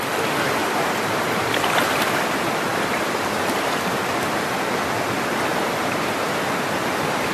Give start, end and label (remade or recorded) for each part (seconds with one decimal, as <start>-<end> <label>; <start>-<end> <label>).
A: 0.0-0.6 recorded; 0.6-2.1 remade; 2.1-2.7 recorded; 2.7-3.9 remade; 3.9-5.5 recorded; 5.5-6.1 remade; 6.1-7.3 recorded